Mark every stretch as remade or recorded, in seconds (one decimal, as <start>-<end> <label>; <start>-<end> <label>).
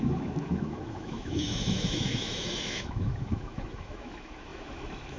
0.0-5.2 remade